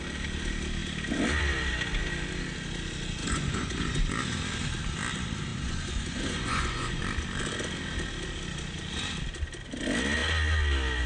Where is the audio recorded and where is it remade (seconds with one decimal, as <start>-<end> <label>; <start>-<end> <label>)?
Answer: 0.0-3.2 recorded; 3.2-4.0 remade; 4.0-5.5 recorded; 5.5-7.0 remade; 7.0-11.1 recorded